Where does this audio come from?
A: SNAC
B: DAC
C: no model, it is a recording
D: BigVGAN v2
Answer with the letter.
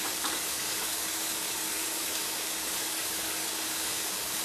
B